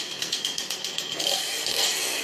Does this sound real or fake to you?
fake